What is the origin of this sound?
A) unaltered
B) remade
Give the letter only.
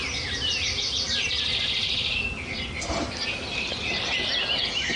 A